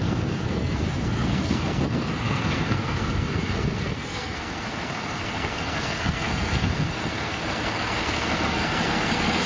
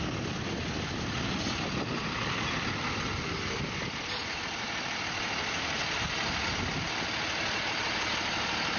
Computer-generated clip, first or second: first